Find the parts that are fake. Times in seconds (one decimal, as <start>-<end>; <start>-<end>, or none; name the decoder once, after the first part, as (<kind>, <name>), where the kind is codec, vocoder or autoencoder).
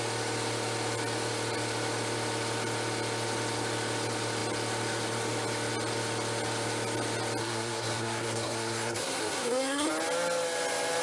7.4-9.9 (codec, SNAC)